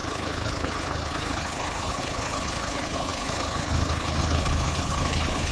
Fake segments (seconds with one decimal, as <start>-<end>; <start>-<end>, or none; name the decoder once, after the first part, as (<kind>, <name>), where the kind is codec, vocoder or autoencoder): 0.0-5.5 (codec, HILCodec)